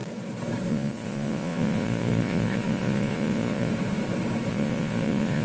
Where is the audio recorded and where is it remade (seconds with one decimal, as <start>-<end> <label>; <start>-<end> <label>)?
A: 0.0-0.7 recorded; 0.7-3.7 remade; 3.7-4.5 recorded; 4.5-5.4 remade